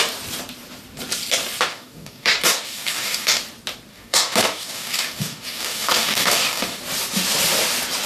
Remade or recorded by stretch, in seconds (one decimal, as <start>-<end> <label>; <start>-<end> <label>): 0.0-1.7 recorded; 1.7-3.4 remade; 3.4-3.9 recorded; 3.9-6.8 remade; 6.8-8.1 recorded